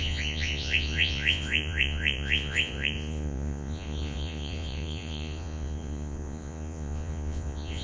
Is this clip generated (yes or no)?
yes